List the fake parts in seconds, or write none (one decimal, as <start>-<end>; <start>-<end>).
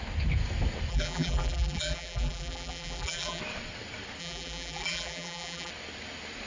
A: 0.9-3.4; 4.2-5.7